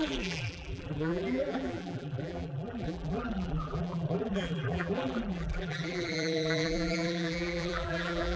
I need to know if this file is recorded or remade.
remade